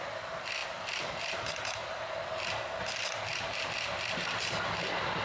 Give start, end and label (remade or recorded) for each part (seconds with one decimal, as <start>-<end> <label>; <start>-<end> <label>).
0.0-5.2 recorded